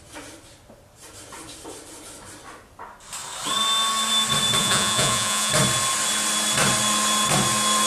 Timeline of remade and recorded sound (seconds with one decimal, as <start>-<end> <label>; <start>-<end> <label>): 0.0-4.6 recorded; 4.6-5.5 remade; 5.5-7.9 recorded